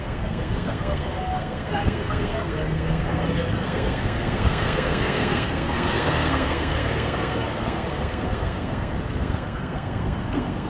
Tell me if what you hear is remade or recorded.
remade